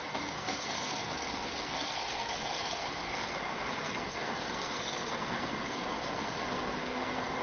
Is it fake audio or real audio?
fake